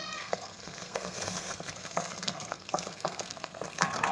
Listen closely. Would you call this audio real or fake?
fake